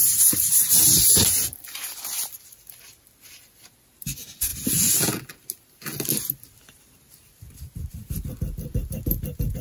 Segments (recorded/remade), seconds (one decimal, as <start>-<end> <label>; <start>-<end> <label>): 0.0-4.5 remade; 4.5-7.3 recorded; 7.3-9.6 remade